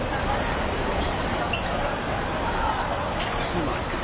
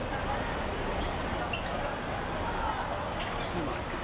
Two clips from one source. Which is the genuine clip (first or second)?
second